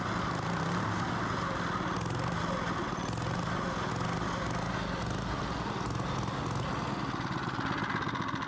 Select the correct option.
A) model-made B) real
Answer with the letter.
B